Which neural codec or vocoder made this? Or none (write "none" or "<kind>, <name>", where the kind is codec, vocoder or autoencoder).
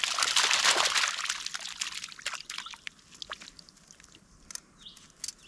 none